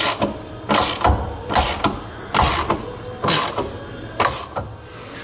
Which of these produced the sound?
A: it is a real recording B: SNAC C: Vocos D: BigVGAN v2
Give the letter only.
A